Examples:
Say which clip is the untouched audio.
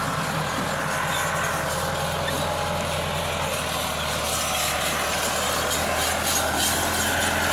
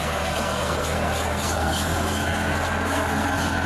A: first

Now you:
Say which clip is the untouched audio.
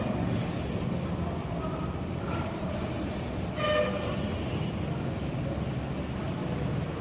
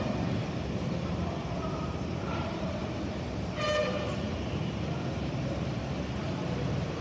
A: first